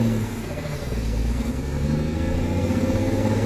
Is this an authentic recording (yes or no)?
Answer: no